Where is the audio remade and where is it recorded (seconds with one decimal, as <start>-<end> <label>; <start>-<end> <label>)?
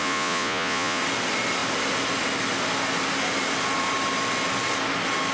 0.0-1.0 remade; 1.0-5.3 recorded